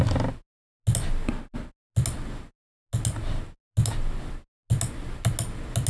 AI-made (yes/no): no